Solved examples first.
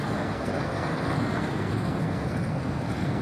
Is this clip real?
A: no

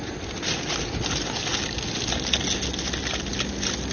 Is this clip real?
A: yes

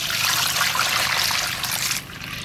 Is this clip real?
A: yes